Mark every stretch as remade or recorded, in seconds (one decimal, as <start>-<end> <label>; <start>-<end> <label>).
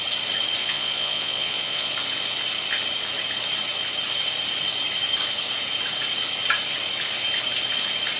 0.0-0.6 recorded; 0.6-1.9 remade; 1.9-8.2 recorded